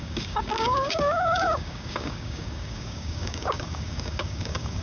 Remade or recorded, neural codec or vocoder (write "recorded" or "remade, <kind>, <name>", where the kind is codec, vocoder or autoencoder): remade, codec, DAC